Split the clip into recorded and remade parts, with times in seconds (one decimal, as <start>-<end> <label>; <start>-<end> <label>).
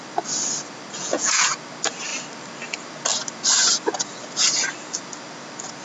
0.0-1.0 recorded; 1.0-1.5 remade; 1.5-5.8 recorded